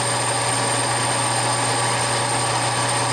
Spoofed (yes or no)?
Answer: no